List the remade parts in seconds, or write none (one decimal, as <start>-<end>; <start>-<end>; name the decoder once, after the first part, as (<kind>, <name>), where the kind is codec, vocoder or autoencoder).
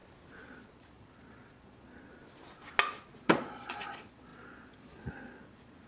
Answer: 0.5-2.2 (vocoder, Vocos); 3.2-5.9